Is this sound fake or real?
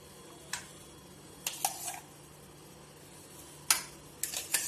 real